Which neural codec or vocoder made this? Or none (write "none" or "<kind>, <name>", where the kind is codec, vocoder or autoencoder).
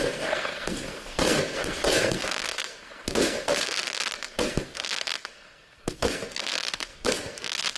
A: codec, SNAC